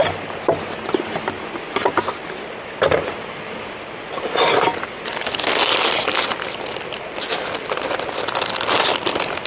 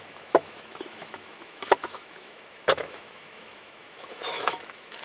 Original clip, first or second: first